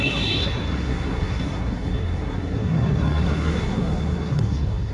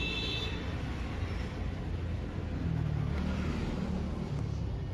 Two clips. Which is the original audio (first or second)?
second